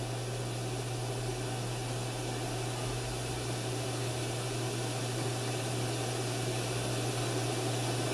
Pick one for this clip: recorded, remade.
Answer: recorded